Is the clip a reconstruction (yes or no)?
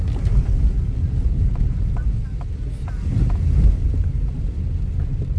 no